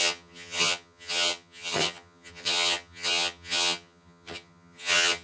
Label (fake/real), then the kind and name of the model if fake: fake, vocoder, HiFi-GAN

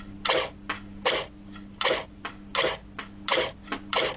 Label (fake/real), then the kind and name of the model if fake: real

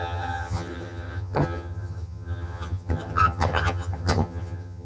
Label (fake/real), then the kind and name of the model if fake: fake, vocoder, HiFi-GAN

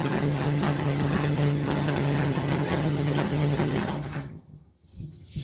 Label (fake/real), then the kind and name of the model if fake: fake, vocoder, HiFi-GAN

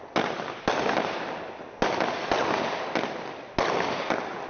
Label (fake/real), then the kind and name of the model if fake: real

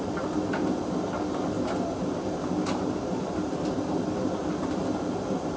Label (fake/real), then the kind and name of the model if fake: real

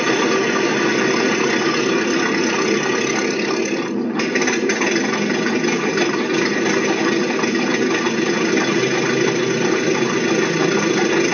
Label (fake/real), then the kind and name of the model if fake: real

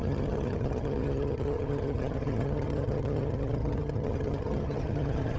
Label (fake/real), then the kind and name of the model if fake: fake, vocoder, HiFi-GAN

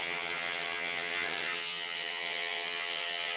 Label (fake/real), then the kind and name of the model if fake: fake, vocoder, HiFi-GAN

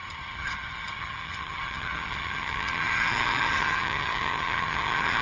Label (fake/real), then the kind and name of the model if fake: fake, vocoder, HiFi-GAN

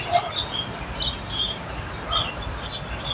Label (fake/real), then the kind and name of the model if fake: real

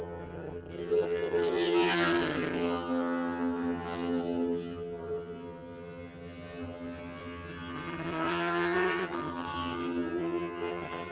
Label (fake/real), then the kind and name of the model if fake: fake, vocoder, HiFi-GAN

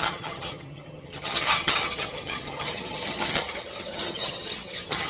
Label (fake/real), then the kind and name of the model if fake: fake, vocoder, HiFi-GAN